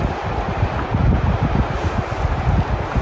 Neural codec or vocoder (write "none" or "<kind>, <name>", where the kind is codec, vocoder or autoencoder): none